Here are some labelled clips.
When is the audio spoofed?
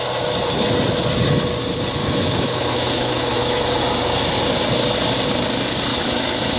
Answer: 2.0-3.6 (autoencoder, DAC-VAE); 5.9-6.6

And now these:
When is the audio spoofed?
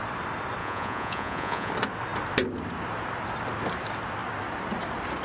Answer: 0.6-1.7 (vocoder, Vocos)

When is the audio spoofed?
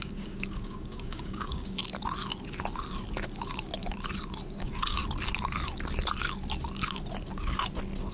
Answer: 0.0-1.8 (codec, DAC); 4.6-5.0